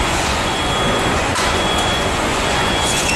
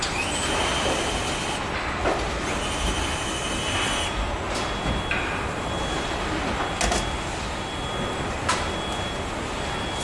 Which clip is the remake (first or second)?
first